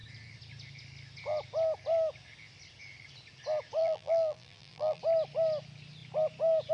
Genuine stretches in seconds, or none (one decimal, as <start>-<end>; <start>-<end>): 0.0-3.8; 5.0-6.7